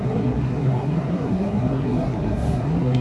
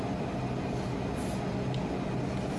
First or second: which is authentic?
second